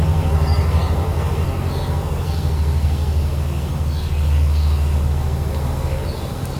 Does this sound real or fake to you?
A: fake